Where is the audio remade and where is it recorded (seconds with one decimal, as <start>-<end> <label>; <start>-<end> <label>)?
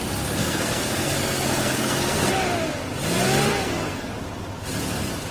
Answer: 0.0-0.4 recorded; 0.4-2.3 remade; 2.3-3.5 recorded; 3.5-4.1 remade; 4.1-5.3 recorded